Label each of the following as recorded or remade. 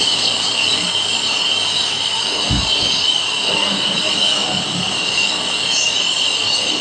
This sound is remade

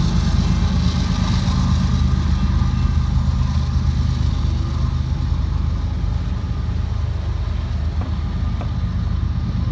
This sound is recorded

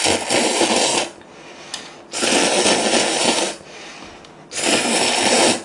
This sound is recorded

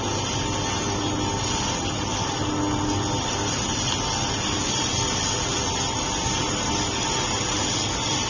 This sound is recorded